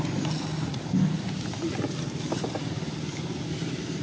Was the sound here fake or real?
real